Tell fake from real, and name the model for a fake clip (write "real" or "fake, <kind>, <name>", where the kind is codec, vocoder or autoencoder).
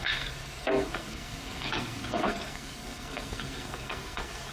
fake, codec, SNAC